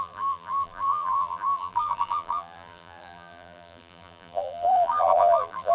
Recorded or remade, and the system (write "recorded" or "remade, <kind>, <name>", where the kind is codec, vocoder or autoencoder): remade, vocoder, BigVGAN v2